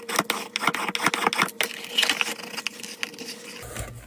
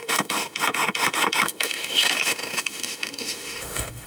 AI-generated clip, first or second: second